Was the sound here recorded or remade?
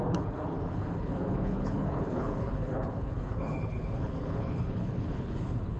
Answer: remade